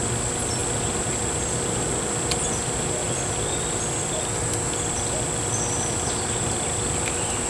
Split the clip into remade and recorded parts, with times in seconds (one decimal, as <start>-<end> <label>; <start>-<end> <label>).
0.0-7.5 recorded